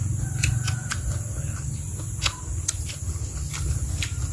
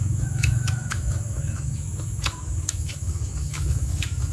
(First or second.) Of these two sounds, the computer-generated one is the second